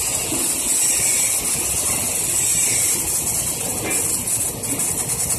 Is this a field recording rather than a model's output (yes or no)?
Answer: yes